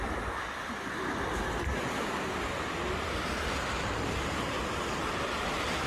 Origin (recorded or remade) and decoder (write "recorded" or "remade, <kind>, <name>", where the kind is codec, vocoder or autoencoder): recorded